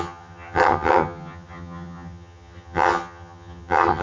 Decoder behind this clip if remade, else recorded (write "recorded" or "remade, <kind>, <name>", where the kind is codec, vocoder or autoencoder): remade, vocoder, HiFi-GAN